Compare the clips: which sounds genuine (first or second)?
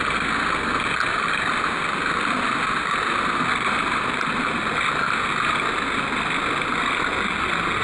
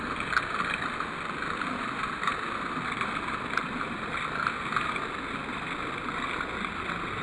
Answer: first